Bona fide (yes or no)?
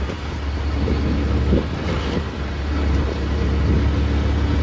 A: yes